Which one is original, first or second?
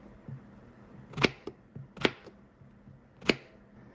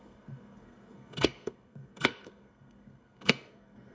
first